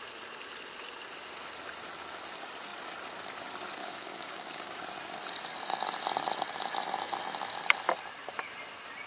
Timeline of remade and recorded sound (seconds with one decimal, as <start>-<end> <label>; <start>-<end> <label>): 0.0-3.8 recorded; 3.8-4.8 remade; 4.8-9.1 recorded

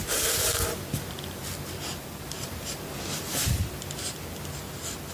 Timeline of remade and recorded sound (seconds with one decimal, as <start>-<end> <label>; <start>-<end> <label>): 0.0-5.1 recorded

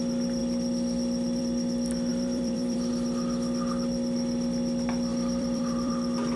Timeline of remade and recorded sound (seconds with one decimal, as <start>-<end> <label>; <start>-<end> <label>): 0.0-2.1 recorded; 2.1-2.9 remade; 2.9-5.1 recorded; 5.1-5.9 remade; 5.9-6.4 recorded

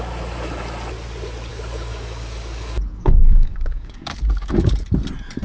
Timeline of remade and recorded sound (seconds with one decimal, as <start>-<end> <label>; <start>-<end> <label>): 0.0-1.5 recorded; 1.5-4.7 remade; 4.7-5.4 recorded

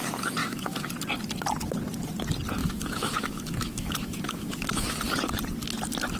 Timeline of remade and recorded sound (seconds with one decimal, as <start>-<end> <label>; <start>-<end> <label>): 0.0-0.4 recorded; 0.4-0.9 remade; 0.9-2.6 recorded; 2.6-5.0 remade; 5.0-6.2 recorded

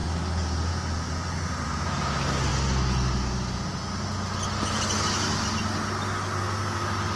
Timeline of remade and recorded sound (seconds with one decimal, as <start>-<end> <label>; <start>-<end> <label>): 0.0-7.2 recorded